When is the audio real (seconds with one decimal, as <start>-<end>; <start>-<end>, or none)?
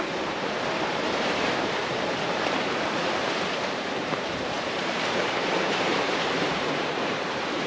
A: none